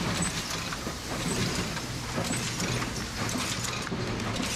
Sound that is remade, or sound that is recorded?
recorded